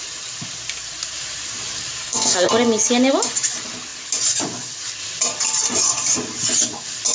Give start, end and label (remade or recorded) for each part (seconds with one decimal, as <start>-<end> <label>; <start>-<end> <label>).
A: 0.0-2.0 recorded; 2.0-2.5 remade; 2.5-7.1 recorded